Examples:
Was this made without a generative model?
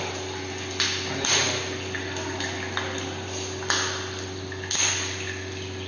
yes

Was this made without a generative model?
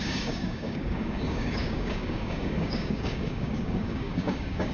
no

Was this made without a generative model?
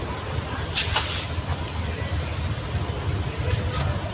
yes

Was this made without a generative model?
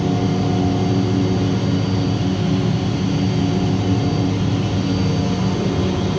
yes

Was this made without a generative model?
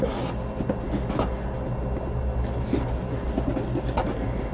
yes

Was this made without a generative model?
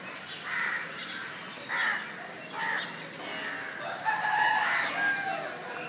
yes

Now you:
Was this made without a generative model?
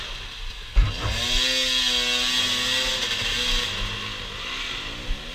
yes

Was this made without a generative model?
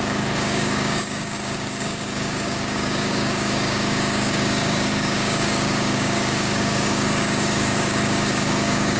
no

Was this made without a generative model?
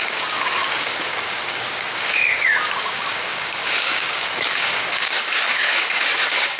no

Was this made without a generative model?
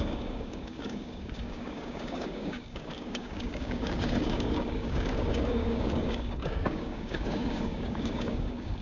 no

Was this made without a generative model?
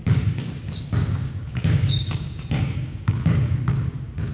no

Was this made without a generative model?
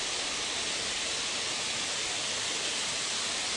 yes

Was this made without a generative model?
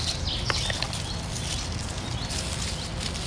yes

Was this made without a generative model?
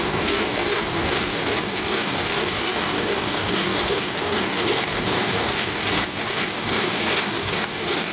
no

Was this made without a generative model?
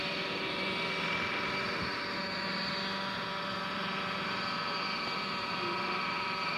yes